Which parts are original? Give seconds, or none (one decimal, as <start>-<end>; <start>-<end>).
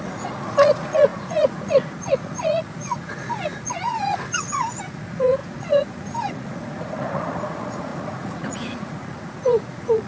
none